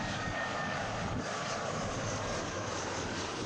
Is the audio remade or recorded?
remade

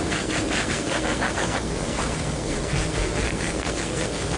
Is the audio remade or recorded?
remade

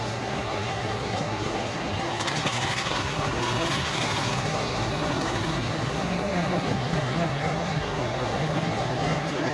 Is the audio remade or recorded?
remade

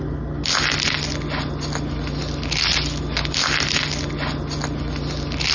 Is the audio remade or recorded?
recorded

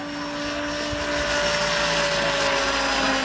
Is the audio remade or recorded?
recorded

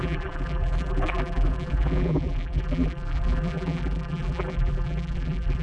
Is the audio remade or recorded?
remade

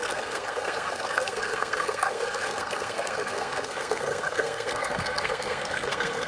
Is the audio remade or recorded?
remade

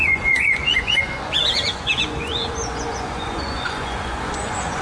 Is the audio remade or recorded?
remade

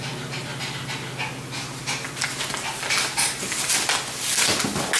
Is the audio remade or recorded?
recorded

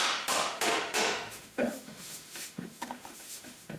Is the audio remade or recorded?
remade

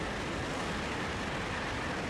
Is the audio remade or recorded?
recorded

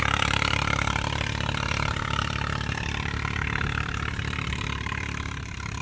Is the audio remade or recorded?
remade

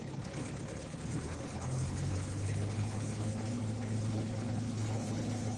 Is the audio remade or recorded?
remade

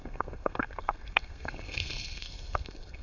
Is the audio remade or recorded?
remade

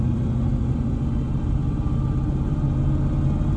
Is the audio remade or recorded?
recorded